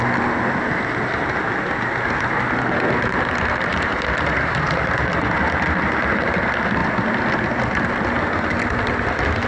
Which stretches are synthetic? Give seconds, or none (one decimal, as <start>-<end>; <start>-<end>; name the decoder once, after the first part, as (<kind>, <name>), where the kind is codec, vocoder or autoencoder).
none

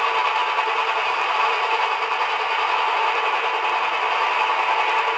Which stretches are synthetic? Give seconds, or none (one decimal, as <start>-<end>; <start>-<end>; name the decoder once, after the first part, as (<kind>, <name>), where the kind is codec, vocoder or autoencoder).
none

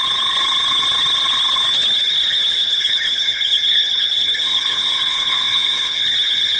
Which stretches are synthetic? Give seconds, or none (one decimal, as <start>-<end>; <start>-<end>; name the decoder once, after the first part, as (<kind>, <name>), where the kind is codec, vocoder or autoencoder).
2.5-6.0 (codec, HILCodec)